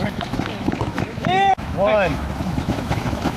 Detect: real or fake fake